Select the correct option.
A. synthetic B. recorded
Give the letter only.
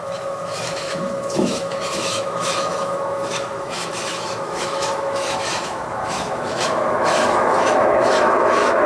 A